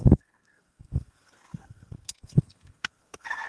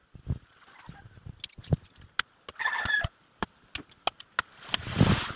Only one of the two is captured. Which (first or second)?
second